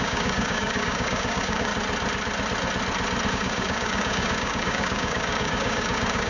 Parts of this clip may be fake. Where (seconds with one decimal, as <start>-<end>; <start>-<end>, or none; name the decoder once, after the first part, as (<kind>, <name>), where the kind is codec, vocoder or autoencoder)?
0.0-1.7 (codec, DAC); 3.3-6.3